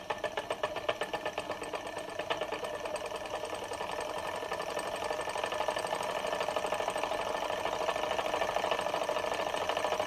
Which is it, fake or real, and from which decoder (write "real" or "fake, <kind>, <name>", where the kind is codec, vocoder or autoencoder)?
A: real